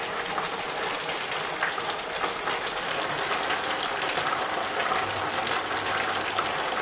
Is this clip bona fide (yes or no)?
yes